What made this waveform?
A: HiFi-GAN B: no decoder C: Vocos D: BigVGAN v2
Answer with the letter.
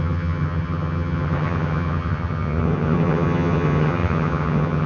A